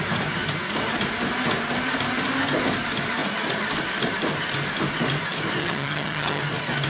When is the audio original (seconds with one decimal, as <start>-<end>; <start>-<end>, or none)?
0.0-5.6; 6.4-6.9